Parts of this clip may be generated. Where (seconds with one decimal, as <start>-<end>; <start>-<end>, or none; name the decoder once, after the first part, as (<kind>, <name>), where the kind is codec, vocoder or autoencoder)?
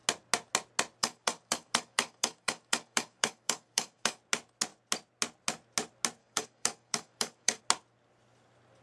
1.0-4.2 (codec, DAC); 6.2-7.6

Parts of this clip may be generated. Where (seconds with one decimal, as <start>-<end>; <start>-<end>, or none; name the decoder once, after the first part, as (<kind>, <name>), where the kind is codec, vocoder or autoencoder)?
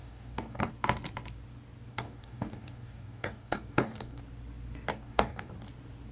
0.0-0.7 (codec, DAC); 1.9-4.2; 4.9-5.5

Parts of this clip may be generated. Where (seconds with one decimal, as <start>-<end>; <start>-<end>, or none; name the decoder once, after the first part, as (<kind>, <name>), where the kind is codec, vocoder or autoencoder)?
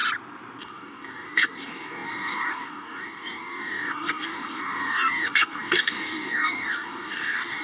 0.6-7.6 (codec, DAC)